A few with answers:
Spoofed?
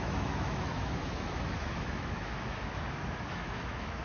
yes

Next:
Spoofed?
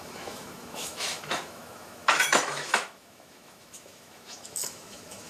yes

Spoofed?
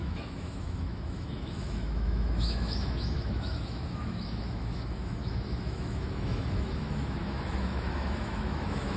yes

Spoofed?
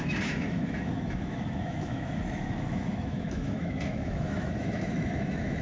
yes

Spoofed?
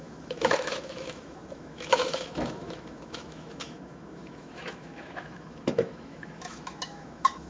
yes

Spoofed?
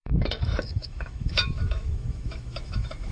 yes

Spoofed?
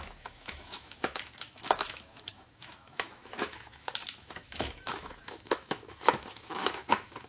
yes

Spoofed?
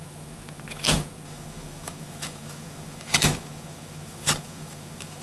yes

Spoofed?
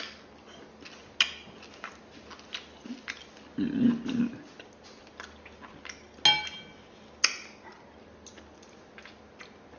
no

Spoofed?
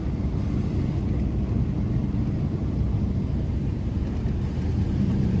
no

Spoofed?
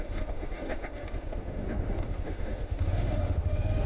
yes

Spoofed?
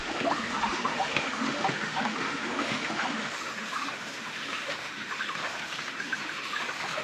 yes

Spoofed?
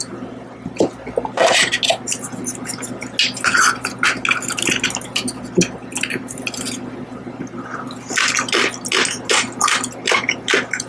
no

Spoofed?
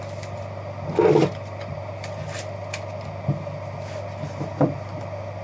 no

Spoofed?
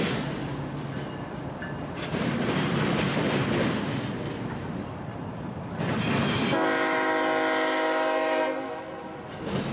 no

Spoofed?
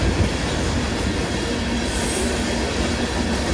no